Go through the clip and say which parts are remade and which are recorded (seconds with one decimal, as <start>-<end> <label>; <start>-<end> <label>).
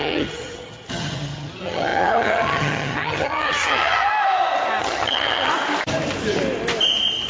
0.0-4.1 remade; 4.1-4.8 recorded; 4.8-5.5 remade; 5.5-7.3 recorded